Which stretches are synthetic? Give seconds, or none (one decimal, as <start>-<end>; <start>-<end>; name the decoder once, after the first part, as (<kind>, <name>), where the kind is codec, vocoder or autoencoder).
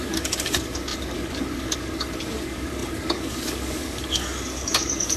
0.0-5.2 (codec, DAC)